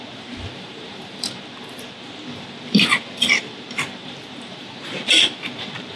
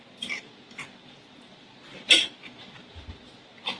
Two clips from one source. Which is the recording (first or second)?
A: second